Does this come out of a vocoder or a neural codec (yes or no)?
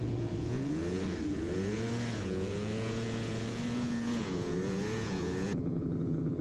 yes